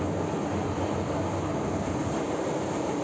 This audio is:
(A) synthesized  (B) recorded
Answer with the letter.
B